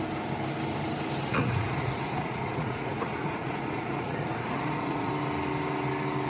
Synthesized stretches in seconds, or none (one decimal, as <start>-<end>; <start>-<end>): 1.3-5.1